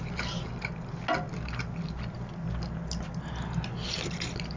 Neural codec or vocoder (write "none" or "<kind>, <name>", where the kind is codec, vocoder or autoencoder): none